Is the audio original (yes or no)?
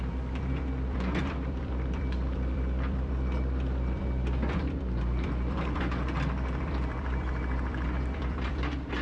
no